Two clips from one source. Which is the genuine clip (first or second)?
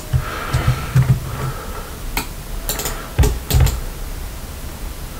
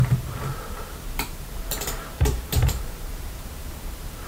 first